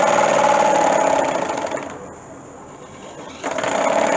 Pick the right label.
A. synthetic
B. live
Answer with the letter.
B